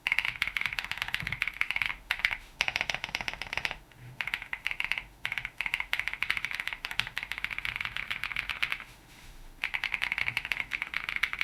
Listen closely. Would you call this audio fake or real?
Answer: fake